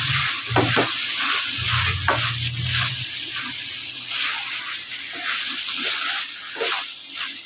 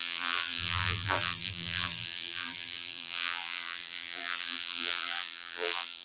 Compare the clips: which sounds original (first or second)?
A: first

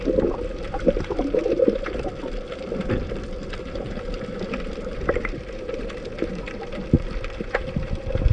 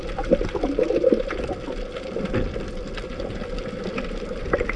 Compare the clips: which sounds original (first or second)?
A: second